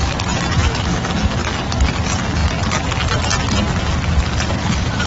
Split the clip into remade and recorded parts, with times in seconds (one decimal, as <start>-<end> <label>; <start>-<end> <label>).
0.0-0.6 recorded; 0.6-1.1 remade; 1.1-5.1 recorded